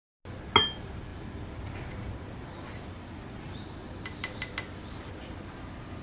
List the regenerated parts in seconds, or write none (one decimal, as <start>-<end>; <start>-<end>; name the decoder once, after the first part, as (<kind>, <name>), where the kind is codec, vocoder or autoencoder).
none

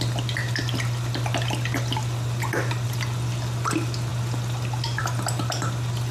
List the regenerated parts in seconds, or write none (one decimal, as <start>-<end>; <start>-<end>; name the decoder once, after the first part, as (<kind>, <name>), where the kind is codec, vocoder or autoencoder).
none

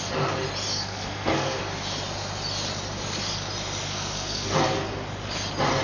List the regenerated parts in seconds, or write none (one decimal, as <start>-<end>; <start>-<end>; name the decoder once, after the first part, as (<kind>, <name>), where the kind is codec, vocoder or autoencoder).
0.7-1.6 (codec, SNAC); 3.9-4.6

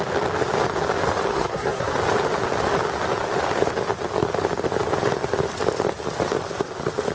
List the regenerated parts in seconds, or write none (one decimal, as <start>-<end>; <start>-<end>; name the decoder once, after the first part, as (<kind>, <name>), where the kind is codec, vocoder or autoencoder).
1.3-1.9 (codec, SNAC)

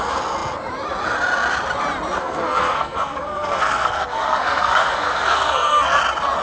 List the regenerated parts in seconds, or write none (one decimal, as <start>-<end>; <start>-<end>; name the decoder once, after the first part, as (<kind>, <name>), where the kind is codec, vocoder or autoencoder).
2.2-6.0 (codec, SNAC)

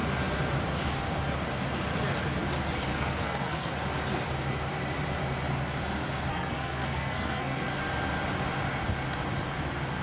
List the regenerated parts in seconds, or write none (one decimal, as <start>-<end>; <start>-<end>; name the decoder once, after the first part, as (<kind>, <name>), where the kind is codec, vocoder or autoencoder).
2.9-3.7 (codec, SNAC); 6.3-7.7